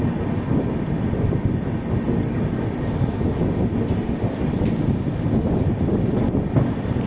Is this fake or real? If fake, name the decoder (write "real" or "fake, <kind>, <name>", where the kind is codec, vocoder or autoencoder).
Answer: real